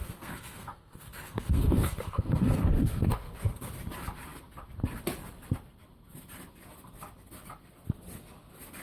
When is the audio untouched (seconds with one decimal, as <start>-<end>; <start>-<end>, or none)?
3.7-8.8